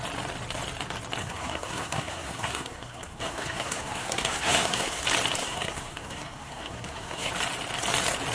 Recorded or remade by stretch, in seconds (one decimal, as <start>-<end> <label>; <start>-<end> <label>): 0.0-1.2 recorded; 1.2-5.0 remade; 5.0-5.4 recorded; 5.4-7.3 remade; 7.3-8.3 recorded